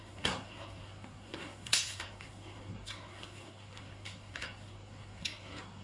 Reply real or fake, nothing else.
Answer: fake